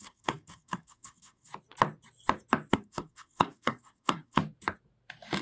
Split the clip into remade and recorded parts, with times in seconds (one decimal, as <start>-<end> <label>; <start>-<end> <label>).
0.0-1.5 remade; 1.5-2.7 recorded; 2.7-4.4 remade; 4.4-5.4 recorded